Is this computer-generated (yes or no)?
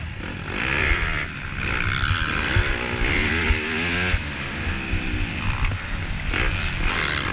no